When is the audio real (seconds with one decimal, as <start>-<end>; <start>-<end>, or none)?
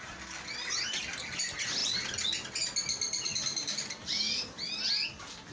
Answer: 0.0-5.5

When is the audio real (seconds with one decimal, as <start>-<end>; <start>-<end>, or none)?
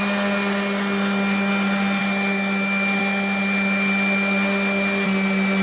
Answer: 0.0-5.6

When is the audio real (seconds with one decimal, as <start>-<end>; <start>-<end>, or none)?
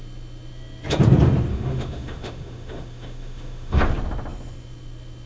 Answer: 0.0-1.5; 3.8-5.3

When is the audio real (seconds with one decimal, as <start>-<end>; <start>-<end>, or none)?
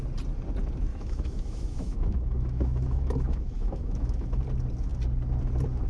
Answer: 0.0-0.9; 4.4-5.9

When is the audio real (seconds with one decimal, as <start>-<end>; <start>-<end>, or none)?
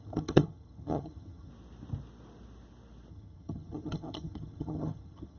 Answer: 1.5-3.1